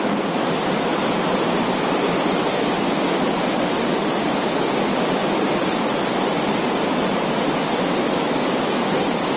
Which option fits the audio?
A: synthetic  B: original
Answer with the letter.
B